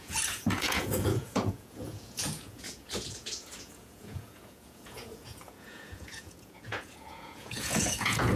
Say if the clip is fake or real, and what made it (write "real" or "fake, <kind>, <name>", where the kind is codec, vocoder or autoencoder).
fake, vocoder, Vocos